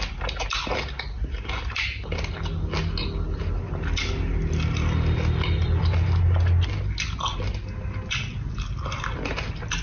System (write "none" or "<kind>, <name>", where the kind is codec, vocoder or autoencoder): none